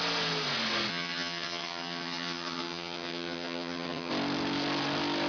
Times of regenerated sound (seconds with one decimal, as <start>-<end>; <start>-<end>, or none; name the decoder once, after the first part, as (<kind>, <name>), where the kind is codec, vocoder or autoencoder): 0.9-4.1 (vocoder, HiFi-GAN)